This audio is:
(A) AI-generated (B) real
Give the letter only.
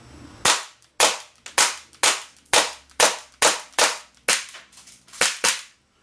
B